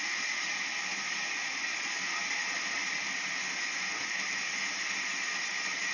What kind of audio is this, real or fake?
real